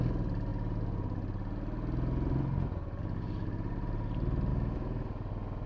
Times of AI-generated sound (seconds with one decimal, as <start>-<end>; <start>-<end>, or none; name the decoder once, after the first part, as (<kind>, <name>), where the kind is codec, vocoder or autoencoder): 4.5-5.3 (autoencoder, DAC-VAE)